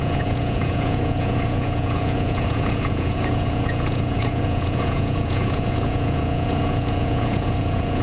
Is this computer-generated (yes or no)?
yes